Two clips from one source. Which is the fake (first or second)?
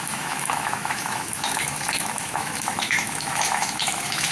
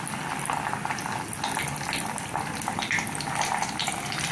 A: first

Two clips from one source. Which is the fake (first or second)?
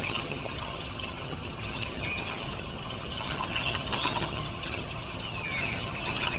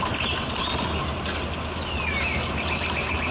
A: first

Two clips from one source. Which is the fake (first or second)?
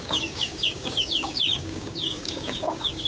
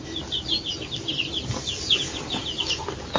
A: first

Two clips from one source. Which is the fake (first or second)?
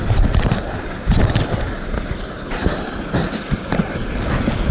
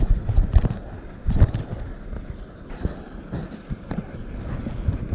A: first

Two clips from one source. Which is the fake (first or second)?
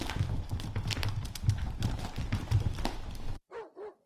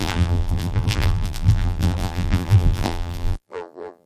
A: second